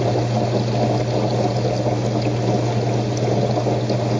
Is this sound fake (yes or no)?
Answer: no